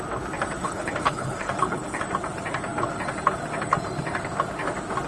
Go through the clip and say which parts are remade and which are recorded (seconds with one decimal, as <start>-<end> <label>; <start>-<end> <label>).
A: 0.0-0.6 recorded; 0.6-2.0 remade; 2.0-5.1 recorded